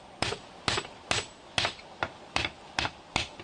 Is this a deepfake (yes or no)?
no